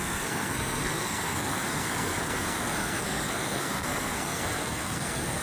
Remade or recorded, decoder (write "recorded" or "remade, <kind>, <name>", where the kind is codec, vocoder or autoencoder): remade, codec, SNAC